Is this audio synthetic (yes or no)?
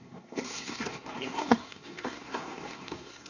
yes